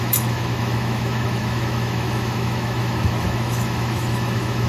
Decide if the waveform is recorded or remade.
remade